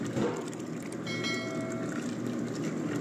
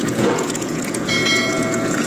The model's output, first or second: second